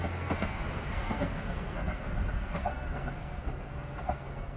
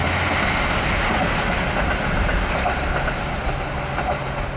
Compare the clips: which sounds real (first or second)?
second